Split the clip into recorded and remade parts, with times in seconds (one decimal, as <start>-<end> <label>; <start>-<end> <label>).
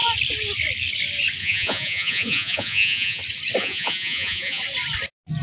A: 0.0-1.4 recorded; 1.4-3.2 remade; 3.2-3.6 recorded; 3.6-4.6 remade; 4.6-5.4 recorded